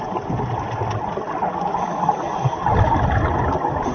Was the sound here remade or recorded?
recorded